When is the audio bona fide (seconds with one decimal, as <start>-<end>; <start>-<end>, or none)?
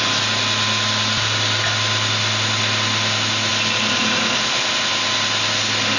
0.0-6.0